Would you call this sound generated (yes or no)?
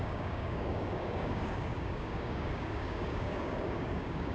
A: yes